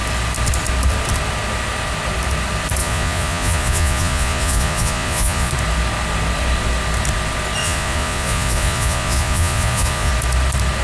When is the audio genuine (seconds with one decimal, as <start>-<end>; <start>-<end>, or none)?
0.0-2.8; 5.5-7.6; 10.1-10.8